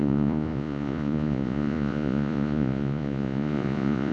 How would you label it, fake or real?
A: fake